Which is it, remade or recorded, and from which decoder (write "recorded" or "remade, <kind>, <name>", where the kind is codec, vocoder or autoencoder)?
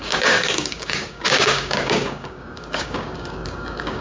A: remade, codec, DAC